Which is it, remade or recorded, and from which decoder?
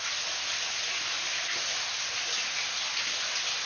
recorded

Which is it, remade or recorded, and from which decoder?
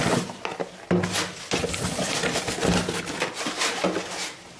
recorded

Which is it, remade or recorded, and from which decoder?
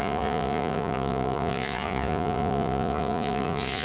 remade, vocoder, Vocos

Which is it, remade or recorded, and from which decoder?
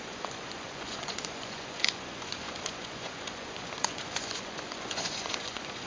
remade, vocoder, Vocos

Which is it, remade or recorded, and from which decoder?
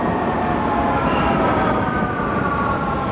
recorded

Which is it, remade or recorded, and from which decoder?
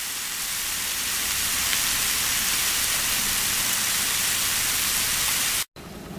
recorded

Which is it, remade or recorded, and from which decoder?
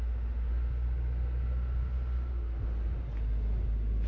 recorded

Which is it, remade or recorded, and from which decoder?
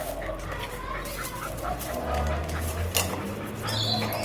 recorded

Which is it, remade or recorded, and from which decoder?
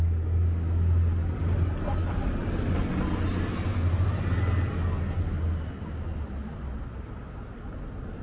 recorded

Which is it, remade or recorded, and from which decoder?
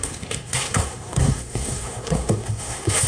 remade, codec, SNAC